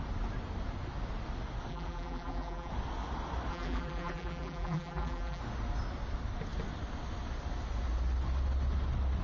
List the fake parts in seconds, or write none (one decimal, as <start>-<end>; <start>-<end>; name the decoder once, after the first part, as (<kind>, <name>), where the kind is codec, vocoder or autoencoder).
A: 1.7-2.7 (vocoder, BigVGAN v2); 3.5-5.4